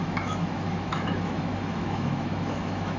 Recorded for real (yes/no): no